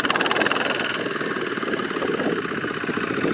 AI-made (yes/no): no